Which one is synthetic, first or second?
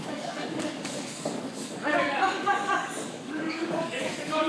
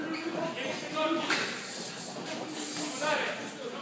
first